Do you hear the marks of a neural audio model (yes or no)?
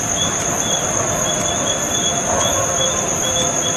no